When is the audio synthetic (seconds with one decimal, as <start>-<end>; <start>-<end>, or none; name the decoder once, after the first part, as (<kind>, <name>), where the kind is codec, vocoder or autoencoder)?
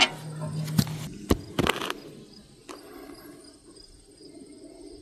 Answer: 2.6-3.4 (vocoder, BigVGAN v2)